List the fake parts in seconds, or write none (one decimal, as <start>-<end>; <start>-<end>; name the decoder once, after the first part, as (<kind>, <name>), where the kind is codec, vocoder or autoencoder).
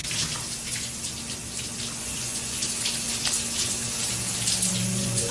2.0-2.6 (vocoder, Vocos); 4.7-5.3